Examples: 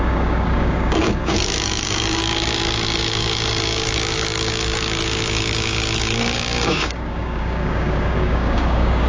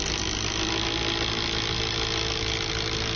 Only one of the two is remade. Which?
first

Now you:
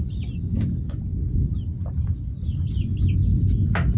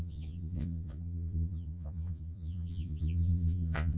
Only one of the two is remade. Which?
second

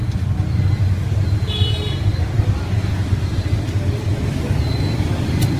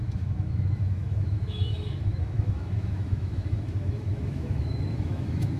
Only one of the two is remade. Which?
second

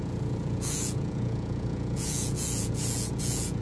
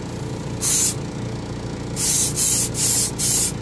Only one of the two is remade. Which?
first